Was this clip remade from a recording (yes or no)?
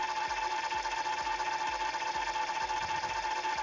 no